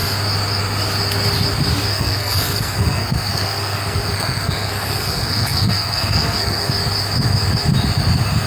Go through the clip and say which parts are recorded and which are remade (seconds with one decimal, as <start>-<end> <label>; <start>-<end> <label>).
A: 0.0-1.9 recorded; 1.9-6.7 remade; 6.7-8.5 recorded